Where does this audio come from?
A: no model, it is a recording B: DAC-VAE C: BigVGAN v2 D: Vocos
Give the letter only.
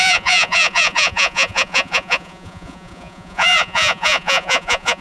D